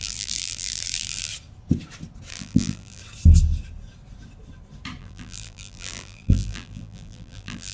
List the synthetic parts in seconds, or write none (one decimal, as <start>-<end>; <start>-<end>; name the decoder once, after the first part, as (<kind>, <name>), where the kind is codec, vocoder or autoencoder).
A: 0.0-1.3 (vocoder, BigVGAN v2); 2.3-3.0; 5.0-7.7